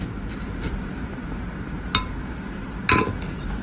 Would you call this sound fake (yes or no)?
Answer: no